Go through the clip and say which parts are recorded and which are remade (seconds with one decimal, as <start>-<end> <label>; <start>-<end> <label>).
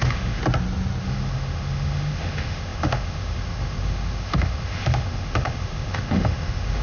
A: 0.0-0.4 remade; 0.4-1.0 recorded; 1.0-6.8 remade